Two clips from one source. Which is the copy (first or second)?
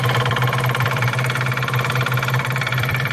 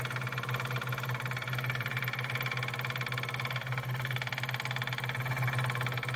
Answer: first